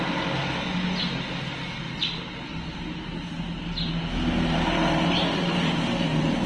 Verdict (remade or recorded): recorded